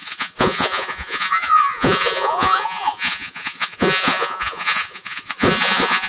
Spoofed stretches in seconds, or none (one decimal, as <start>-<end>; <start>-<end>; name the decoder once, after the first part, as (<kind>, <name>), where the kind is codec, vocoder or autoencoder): 0.0-6.1 (vocoder, Vocos)